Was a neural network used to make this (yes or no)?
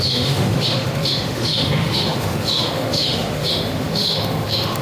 yes